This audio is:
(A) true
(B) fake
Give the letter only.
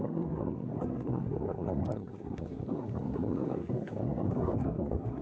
B